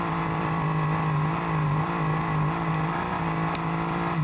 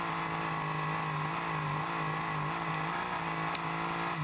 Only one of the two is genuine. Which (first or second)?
second